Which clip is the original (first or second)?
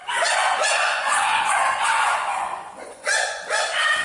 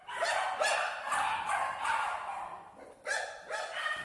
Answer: second